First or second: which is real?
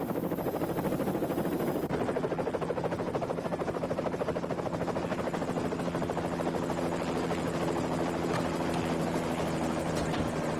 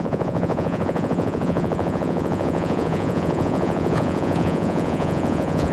first